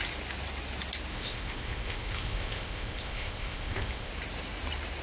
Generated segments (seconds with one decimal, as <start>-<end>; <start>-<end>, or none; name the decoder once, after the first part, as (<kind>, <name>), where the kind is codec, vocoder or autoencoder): 1.1-4.1 (codec, ZipCodec)

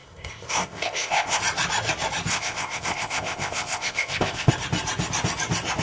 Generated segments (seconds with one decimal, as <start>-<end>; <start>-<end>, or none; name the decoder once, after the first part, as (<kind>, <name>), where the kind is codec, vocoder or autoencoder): 0.0-1.4 (codec, ZipCodec); 2.3-4.5

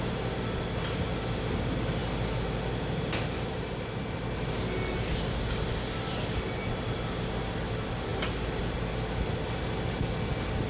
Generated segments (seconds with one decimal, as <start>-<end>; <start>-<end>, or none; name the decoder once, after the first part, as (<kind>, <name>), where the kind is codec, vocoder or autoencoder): none

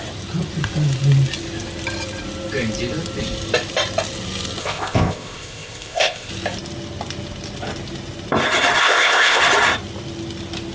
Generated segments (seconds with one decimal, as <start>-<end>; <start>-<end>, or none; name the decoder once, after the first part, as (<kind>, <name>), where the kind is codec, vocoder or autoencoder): 4.6-6.3 (codec, ZipCodec); 8.8-9.4